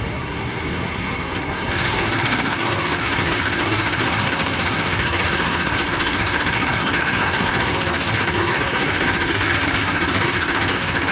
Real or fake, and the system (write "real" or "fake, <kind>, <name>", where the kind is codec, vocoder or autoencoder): fake, codec, SNAC